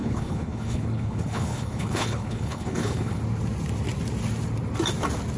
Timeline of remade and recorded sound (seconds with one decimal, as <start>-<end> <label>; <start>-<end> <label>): 0.0-3.2 remade; 3.2-5.4 recorded